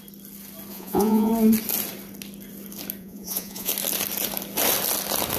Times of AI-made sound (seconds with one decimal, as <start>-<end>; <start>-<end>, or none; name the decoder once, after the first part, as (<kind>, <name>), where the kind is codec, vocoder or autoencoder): 0.7-1.3 (vocoder, Vocos); 3.0-3.7